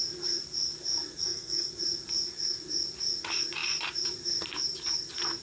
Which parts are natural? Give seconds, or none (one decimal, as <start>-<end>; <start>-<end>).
0.0-1.2; 1.7-5.4